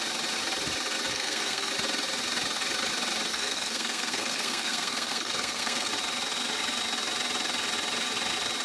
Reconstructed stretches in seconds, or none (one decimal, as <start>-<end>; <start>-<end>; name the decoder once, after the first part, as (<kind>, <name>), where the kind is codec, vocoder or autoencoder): 1.1-1.7 (codec, SNAC); 3.3-5.9

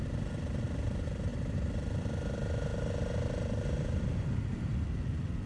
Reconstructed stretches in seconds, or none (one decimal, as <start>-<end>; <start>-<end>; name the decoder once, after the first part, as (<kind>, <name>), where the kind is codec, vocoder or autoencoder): none

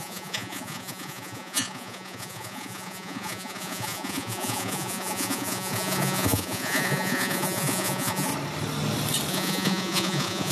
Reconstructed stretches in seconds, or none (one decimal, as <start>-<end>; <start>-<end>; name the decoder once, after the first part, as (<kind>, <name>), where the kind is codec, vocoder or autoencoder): 0.0-8.3 (vocoder, Vocos); 9.3-10.5